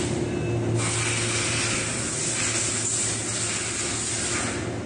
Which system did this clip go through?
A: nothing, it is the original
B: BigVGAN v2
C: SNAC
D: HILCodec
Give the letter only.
A